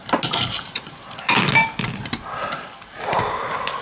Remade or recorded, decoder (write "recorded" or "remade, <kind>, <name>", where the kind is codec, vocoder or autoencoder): recorded